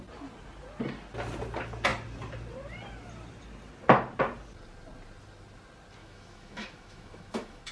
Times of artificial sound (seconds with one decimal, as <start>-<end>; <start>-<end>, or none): 6.0-7.7